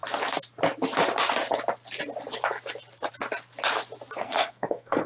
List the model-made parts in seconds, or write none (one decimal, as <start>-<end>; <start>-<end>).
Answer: 4.2-5.1